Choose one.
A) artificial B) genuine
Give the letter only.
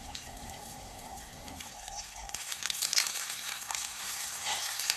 A